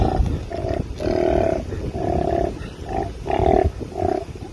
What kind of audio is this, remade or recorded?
recorded